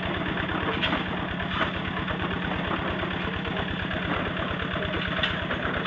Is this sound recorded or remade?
recorded